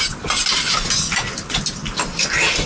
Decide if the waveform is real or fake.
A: real